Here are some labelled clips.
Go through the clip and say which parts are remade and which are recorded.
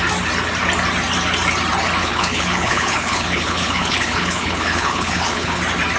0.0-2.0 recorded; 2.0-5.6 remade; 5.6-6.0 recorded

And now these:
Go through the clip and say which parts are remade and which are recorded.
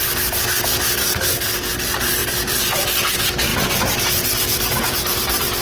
0.0-1.0 recorded; 1.0-1.7 remade; 1.7-5.6 recorded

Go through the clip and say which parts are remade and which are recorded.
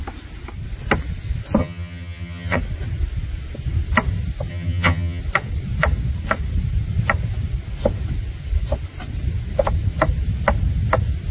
0.0-1.6 recorded; 1.6-2.6 remade; 2.6-4.5 recorded; 4.5-5.2 remade; 5.2-11.3 recorded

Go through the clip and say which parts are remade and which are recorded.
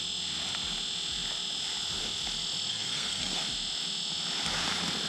0.0-2.7 recorded; 2.7-3.4 remade; 3.4-5.1 recorded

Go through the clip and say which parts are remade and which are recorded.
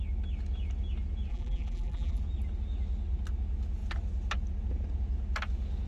0.0-1.3 recorded; 1.3-2.2 remade; 2.2-5.9 recorded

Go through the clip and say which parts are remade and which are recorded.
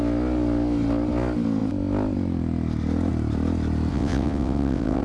0.0-3.9 recorded; 3.9-5.0 remade